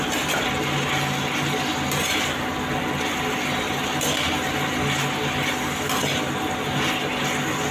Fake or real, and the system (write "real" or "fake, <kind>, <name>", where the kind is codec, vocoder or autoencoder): real